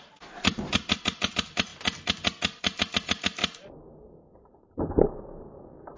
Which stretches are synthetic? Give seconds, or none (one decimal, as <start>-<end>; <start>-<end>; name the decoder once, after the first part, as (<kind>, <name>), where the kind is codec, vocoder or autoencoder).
0.0-1.7 (vocoder, BigVGAN v2); 2.6-3.4; 4.3-6.0